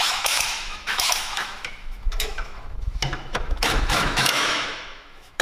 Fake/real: fake